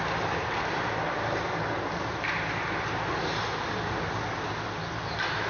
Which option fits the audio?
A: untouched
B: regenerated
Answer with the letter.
A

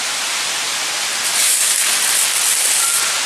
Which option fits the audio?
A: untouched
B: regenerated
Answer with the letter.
A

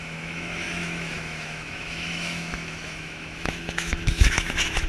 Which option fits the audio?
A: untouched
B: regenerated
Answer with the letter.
B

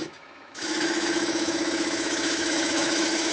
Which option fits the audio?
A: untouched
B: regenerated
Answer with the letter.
B